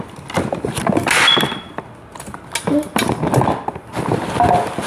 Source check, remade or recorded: recorded